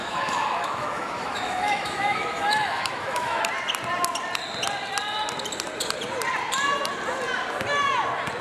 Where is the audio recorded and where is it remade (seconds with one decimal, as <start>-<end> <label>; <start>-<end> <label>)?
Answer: 0.0-3.4 remade; 3.4-8.4 recorded